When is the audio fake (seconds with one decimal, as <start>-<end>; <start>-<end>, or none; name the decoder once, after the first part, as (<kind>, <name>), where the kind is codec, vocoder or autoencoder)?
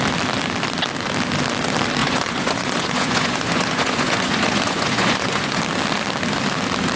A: 2.0-5.6 (vocoder, Vocos)